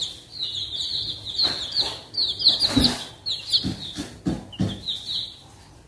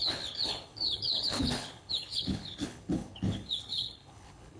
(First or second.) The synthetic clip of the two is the second